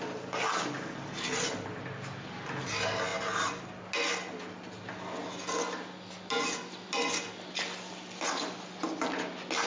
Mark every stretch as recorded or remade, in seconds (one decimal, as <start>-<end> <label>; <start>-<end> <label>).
0.0-9.7 recorded

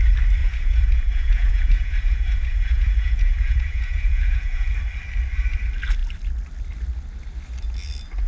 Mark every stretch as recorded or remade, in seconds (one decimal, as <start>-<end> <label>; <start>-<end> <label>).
0.0-0.4 recorded; 0.4-4.7 remade; 4.7-8.3 recorded

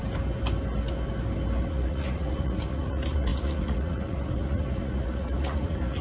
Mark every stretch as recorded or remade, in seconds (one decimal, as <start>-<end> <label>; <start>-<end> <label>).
0.0-1.6 recorded; 1.6-6.0 remade

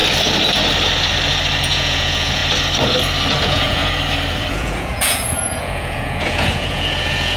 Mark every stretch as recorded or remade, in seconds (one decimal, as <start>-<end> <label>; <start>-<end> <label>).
0.0-1.6 recorded; 1.6-2.4 remade; 2.4-3.4 recorded; 3.4-3.8 remade; 3.8-4.5 recorded; 4.5-7.4 remade

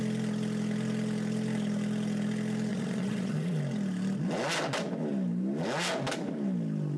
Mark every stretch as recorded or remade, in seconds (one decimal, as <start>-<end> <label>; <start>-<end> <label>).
0.0-2.7 recorded; 2.7-3.6 remade; 3.6-7.0 recorded